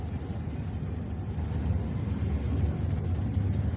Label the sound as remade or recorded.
recorded